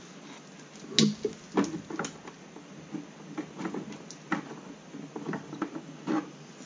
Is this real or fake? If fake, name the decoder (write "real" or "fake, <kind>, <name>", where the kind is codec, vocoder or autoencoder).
real